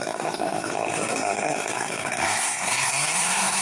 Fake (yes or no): yes